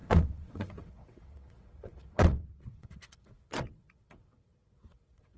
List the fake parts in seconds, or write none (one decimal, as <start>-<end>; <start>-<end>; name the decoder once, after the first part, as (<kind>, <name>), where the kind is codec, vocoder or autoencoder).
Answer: 0.0-5.4 (vocoder, WaveNeXt)